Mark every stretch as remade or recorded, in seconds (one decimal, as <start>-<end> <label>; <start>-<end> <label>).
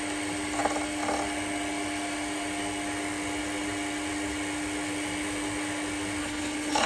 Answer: 0.0-6.2 recorded; 6.2-6.9 remade